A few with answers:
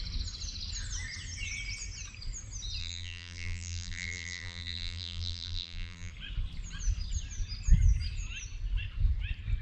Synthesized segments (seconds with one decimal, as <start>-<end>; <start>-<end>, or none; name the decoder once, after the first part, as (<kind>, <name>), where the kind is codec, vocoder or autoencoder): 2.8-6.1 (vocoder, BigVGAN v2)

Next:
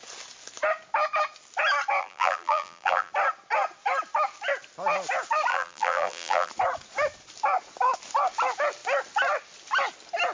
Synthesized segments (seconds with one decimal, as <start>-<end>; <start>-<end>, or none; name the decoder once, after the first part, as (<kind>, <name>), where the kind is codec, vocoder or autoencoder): 2.0-3.1 (vocoder, BigVGAN v2); 5.5-6.5

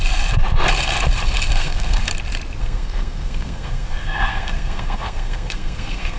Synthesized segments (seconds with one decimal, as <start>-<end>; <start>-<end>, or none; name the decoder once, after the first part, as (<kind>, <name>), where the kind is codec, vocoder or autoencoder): 1.5-2.1 (codec, SNAC); 2.6-6.2

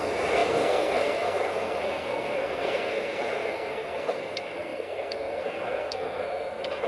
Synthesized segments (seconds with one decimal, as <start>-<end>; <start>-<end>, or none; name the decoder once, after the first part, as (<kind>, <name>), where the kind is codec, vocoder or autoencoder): 0.0-6.9 (codec, SNAC)